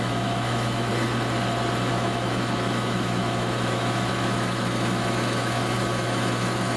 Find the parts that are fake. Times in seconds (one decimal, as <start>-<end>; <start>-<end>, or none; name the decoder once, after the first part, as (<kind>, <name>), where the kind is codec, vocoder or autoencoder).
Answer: 0.0-0.9 (autoencoder, DAC-VAE); 1.9-6.8